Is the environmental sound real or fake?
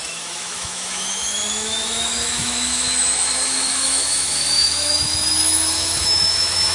fake